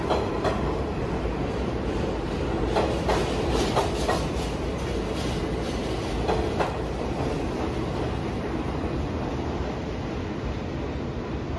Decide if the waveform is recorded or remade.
recorded